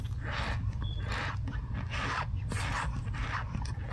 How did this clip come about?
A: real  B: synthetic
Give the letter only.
A